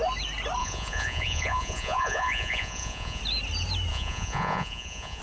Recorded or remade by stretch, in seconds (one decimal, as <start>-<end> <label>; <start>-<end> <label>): 0.0-0.6 recorded; 0.6-3.2 remade; 3.2-3.9 recorded; 3.9-5.2 remade